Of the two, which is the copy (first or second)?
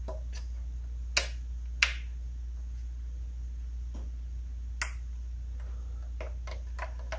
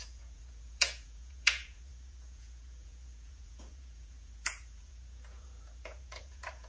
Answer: second